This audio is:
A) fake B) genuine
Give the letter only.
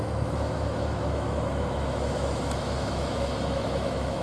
A